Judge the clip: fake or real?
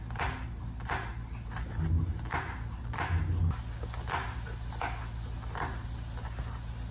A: real